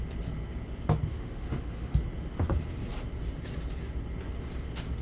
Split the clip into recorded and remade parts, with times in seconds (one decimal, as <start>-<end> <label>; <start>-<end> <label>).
0.0-1.1 recorded; 1.1-1.9 remade; 1.9-5.0 recorded